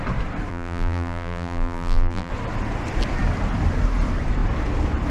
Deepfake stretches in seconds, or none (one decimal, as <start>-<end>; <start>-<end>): 0.5-2.3